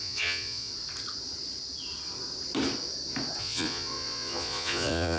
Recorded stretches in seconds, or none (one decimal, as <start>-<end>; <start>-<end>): 0.7-3.4